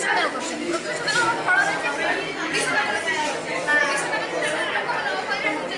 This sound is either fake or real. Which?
real